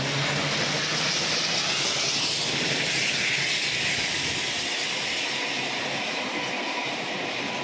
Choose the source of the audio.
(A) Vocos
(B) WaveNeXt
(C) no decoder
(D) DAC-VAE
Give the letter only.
C